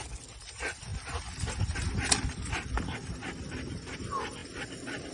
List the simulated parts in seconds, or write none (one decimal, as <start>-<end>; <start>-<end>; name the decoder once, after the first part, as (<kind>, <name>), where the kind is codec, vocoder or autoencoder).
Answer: none